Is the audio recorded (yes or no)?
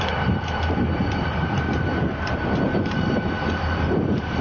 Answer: no